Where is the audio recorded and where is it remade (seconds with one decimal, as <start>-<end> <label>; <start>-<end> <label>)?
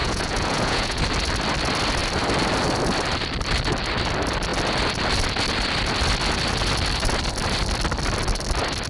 0.0-1.0 remade; 1.0-8.9 recorded